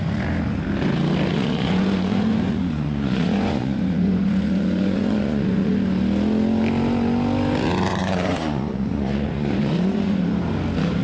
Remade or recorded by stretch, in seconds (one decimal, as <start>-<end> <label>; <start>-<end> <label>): 0.0-1.3 recorded; 1.3-5.7 remade; 5.7-7.9 recorded; 7.9-10.2 remade; 10.2-11.0 recorded

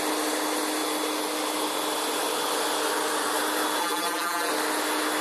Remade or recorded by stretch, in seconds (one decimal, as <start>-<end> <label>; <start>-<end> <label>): 0.0-3.8 recorded; 3.8-4.5 remade; 4.5-5.2 recorded

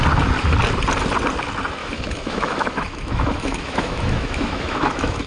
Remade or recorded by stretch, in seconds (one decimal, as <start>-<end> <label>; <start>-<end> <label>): 0.0-1.8 recorded; 1.8-5.3 remade

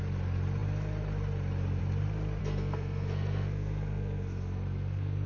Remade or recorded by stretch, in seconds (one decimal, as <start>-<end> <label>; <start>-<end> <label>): 0.0-2.4 recorded; 2.4-5.3 remade